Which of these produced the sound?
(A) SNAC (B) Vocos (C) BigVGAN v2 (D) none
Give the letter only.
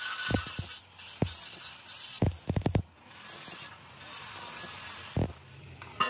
D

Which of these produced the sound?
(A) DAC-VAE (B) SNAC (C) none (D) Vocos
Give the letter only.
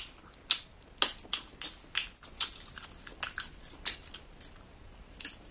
C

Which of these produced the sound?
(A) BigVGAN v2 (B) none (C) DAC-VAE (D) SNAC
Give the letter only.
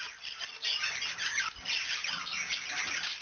B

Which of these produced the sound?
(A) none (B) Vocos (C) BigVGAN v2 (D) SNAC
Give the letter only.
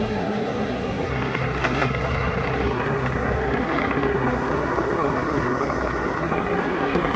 D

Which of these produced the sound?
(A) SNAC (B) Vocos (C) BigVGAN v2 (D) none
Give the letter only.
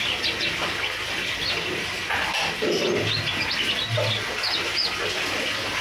D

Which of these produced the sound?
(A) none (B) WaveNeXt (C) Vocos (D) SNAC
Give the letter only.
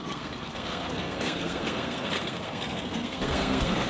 D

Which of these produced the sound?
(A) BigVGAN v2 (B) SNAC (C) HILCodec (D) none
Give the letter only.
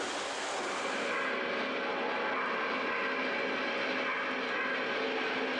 D